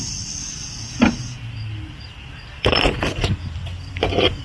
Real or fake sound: fake